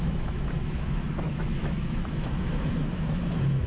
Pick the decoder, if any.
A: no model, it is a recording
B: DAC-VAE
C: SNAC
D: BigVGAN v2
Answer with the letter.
B